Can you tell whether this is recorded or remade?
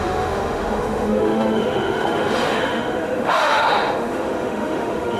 remade